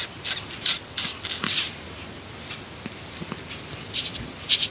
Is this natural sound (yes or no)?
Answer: yes